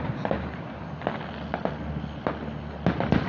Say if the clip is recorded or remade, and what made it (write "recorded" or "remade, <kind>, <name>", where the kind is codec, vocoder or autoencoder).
recorded